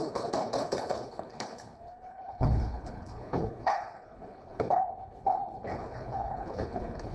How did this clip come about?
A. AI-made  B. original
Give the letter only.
A